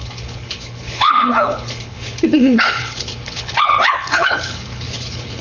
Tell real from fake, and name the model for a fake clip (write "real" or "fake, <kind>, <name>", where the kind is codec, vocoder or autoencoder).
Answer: fake, codec, HILCodec